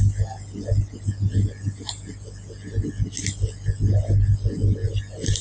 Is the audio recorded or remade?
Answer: recorded